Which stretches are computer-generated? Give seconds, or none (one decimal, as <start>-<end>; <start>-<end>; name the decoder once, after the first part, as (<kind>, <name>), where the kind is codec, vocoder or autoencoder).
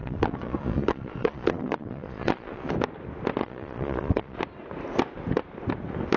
0.0-2.7 (vocoder, Vocos); 3.4-4.4